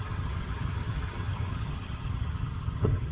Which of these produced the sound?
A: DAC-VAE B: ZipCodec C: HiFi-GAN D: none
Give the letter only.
C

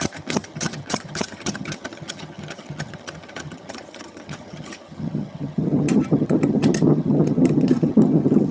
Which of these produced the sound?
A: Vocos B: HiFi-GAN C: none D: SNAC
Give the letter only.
B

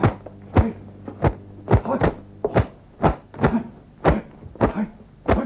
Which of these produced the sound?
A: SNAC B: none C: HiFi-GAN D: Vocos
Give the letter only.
B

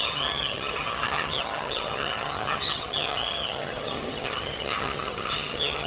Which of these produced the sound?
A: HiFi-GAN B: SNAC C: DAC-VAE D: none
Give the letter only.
A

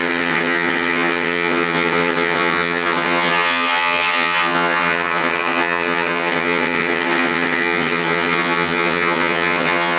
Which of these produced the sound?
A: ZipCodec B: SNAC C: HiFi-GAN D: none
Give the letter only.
C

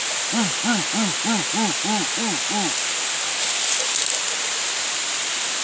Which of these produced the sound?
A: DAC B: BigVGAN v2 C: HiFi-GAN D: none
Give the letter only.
D